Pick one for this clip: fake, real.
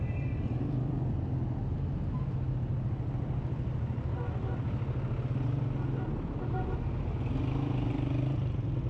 real